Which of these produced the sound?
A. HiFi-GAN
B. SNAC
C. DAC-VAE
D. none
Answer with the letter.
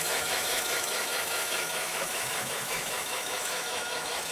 C